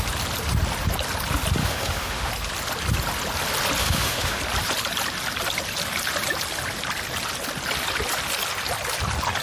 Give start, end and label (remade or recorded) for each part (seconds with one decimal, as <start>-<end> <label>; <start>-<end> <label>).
0.0-1.6 recorded; 1.6-2.3 remade; 2.3-3.8 recorded; 3.8-4.4 remade; 4.4-9.4 recorded